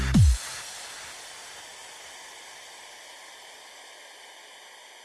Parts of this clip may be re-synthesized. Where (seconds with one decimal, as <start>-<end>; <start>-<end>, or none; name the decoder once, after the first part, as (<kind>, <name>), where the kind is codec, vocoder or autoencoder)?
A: none